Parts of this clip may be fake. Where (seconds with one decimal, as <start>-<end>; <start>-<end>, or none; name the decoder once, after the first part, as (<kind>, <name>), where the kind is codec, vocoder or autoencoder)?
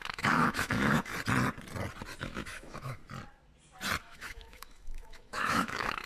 0.0-1.1 (autoencoder, DAC-VAE); 2.2-3.0; 4.0-6.1